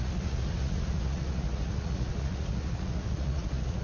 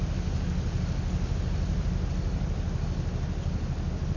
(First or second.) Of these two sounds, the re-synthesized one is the first